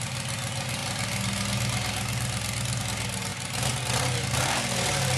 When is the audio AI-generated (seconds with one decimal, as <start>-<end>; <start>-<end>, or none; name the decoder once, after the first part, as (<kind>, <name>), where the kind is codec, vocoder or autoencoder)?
none